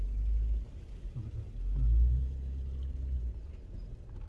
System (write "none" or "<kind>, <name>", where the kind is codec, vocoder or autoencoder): none